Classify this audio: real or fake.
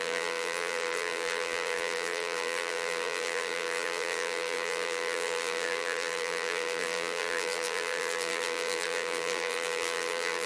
fake